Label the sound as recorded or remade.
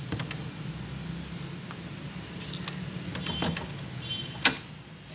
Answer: recorded